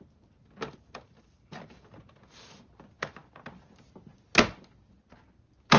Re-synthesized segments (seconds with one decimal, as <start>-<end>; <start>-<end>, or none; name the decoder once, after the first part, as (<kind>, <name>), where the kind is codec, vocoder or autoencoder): none